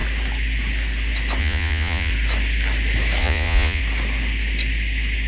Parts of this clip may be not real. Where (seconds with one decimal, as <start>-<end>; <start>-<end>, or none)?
1.4-2.1; 3.2-3.8